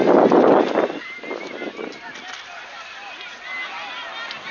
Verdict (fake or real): real